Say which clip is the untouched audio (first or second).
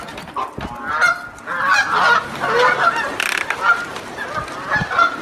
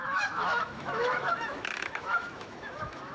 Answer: first